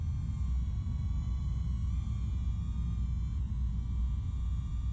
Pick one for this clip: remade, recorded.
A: recorded